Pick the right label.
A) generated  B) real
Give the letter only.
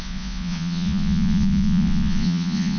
A